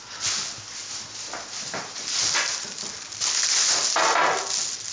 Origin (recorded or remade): recorded